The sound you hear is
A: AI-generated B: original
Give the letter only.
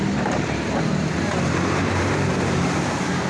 A